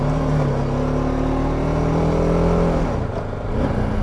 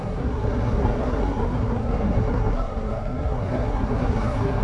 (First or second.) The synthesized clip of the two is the second